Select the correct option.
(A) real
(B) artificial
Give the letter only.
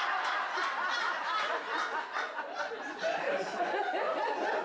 A